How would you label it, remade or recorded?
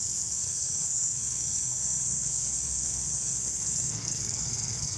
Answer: remade